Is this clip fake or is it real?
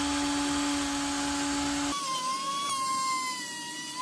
real